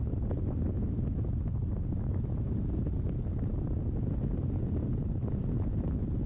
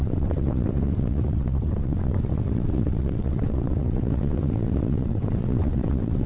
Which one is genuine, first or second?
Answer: first